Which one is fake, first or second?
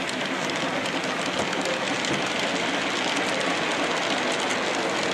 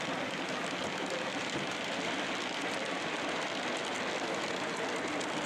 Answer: second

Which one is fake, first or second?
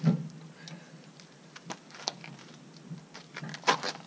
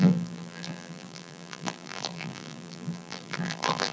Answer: second